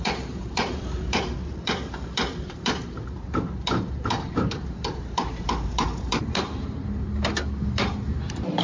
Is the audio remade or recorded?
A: remade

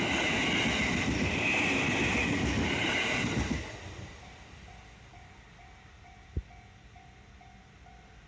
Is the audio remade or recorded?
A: recorded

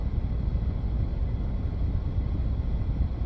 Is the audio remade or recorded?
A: recorded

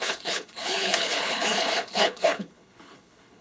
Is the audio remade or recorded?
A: remade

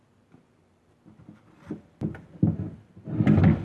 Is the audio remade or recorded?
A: recorded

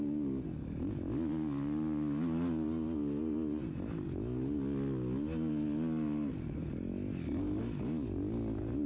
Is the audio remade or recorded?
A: recorded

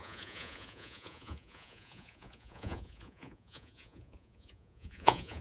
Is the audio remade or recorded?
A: remade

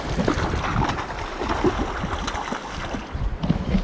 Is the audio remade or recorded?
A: recorded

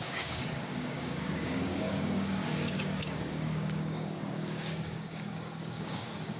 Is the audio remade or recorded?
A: remade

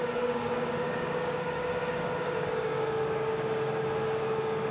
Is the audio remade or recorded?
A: remade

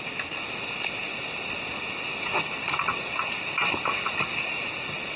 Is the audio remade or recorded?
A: recorded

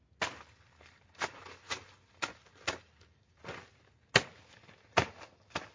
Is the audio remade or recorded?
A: recorded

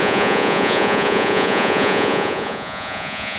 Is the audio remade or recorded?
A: remade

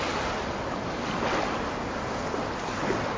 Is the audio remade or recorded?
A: recorded